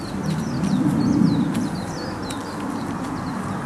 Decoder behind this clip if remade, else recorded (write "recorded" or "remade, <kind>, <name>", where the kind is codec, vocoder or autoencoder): recorded